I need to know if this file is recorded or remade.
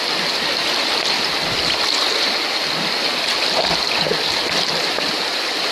recorded